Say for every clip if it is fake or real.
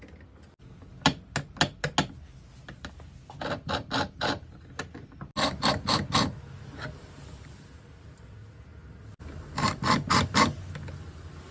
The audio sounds real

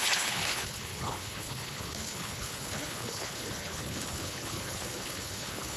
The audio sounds fake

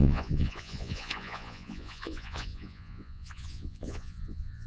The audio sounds fake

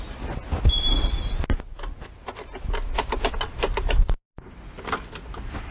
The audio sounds real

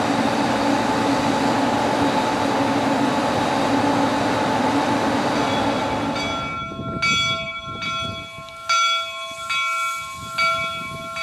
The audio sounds real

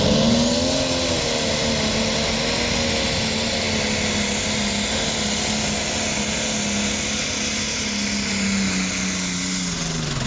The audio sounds real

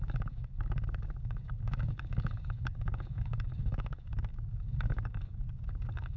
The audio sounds fake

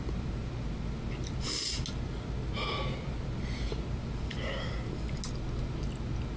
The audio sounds real